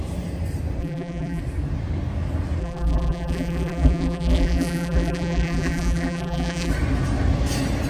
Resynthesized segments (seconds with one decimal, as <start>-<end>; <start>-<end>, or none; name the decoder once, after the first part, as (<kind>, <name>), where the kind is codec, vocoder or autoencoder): 0.8-1.4 (vocoder, BigVGAN v2); 2.6-6.7